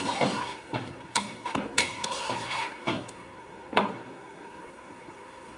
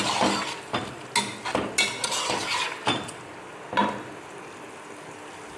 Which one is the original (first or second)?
second